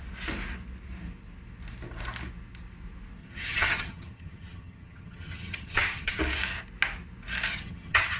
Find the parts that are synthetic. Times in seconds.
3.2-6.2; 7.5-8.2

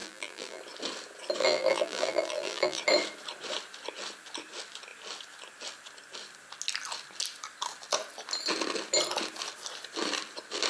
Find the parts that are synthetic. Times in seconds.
0.0-0.6; 1.4-2.8